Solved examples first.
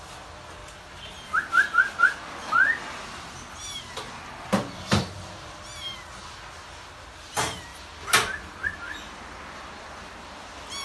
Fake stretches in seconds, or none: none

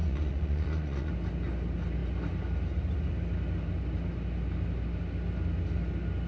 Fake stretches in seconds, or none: 0.0-1.1 (vocoder, Vocos)